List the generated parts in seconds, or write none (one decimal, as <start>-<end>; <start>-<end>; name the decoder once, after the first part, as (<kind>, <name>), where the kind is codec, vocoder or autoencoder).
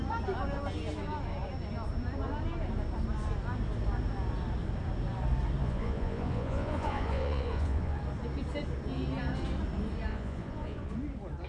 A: 5.6-8.0 (vocoder, Vocos); 10.1-10.9